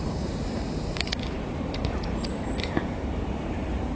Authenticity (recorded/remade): remade